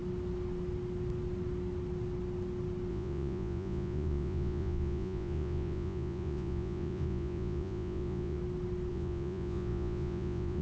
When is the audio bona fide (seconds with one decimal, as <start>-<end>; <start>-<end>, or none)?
0.0-2.9; 8.4-8.9